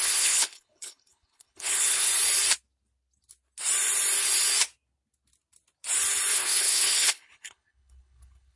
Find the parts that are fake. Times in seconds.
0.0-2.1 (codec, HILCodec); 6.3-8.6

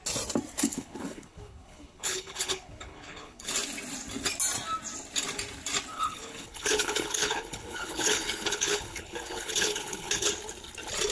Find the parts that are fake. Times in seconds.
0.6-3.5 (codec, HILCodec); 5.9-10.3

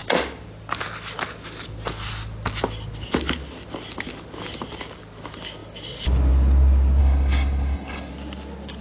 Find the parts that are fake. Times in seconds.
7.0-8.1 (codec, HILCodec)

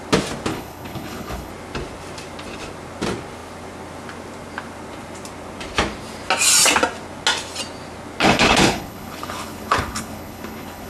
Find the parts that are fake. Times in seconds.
0.5-1.5 (codec, HILCodec); 8.2-10.9